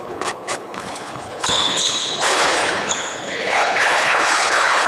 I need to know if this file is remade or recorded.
remade